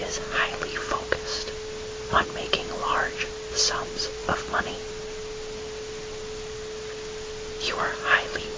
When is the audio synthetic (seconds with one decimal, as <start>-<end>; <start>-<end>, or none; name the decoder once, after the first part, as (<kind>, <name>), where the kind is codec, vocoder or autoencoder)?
none